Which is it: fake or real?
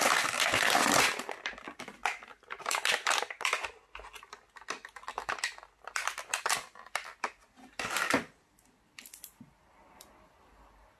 real